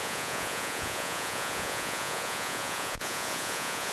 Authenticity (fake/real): fake